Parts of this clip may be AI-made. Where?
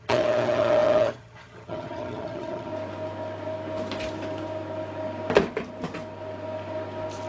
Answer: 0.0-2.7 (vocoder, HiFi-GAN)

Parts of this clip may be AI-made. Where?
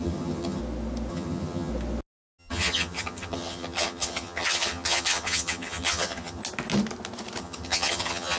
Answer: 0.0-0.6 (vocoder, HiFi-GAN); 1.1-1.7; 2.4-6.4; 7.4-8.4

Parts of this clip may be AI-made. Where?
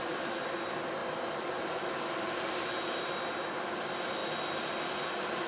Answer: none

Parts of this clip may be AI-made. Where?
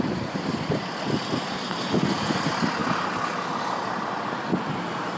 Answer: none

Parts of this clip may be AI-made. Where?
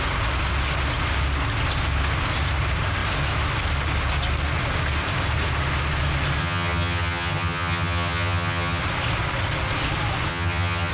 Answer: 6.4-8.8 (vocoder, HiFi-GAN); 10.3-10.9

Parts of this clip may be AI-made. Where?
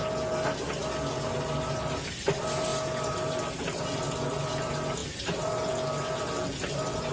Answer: none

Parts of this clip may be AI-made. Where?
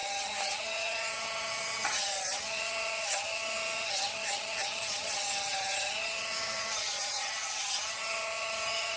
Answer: 0.0-9.0 (vocoder, HiFi-GAN)